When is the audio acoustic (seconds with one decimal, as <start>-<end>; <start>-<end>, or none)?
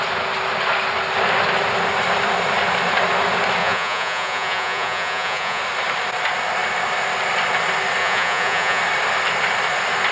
0.0-3.6; 5.6-8.0; 8.8-10.1